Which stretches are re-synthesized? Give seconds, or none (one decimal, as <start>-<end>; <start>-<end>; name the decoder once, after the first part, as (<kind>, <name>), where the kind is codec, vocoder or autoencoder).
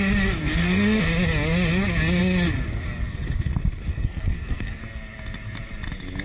0.4-1.1 (codec, SNAC); 3.9-4.8